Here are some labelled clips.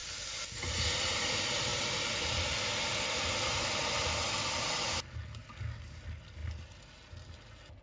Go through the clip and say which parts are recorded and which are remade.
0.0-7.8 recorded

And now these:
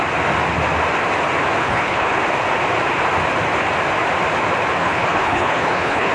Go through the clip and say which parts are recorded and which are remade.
0.0-1.6 recorded; 1.6-2.2 remade; 2.2-4.8 recorded; 4.8-6.1 remade

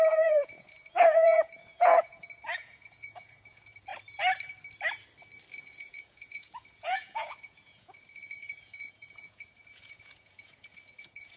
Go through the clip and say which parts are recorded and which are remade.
0.0-3.9 remade; 3.9-5.6 recorded; 5.6-11.4 remade

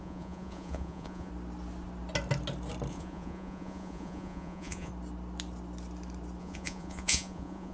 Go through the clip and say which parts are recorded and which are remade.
0.0-1.3 remade; 1.3-2.9 recorded; 2.9-4.9 remade; 4.9-6.4 recorded; 6.4-7.7 remade

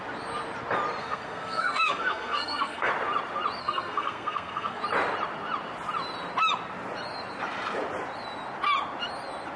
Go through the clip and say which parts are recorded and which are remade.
0.0-1.0 recorded; 1.0-2.9 remade; 2.9-3.6 recorded; 3.6-4.8 remade; 4.8-9.6 recorded